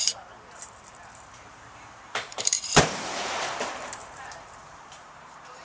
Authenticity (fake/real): fake